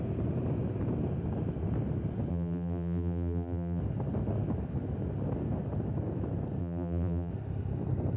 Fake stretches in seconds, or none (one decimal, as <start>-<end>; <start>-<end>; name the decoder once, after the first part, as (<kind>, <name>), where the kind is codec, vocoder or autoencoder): 2.3-3.8 (vocoder, BigVGAN v2); 6.6-7.3